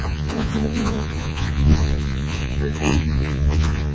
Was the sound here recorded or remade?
remade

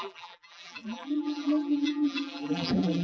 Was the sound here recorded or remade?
remade